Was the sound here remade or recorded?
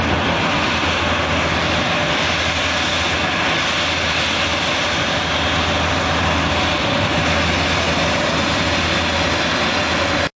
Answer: recorded